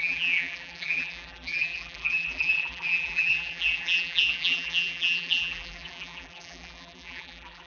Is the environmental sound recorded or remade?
remade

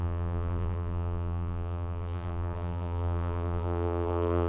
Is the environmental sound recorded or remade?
remade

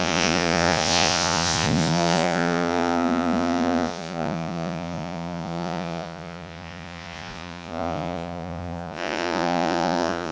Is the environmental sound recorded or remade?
remade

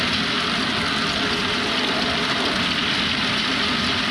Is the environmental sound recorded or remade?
recorded